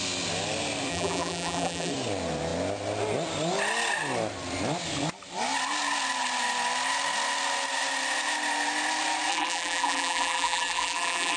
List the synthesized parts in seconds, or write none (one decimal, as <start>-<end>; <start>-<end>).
0.9-1.9; 9.3-11.4